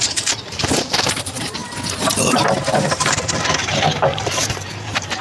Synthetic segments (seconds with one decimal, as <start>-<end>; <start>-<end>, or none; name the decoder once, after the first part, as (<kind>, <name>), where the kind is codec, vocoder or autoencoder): 0.0-1.6 (vocoder, BigVGAN v2); 2.2-5.2